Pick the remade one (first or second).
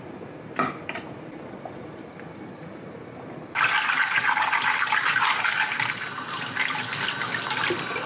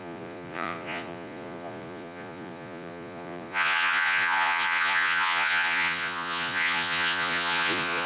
second